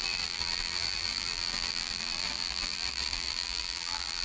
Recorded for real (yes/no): no